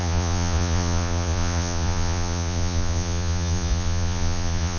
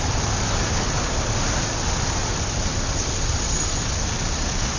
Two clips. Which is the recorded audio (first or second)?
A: second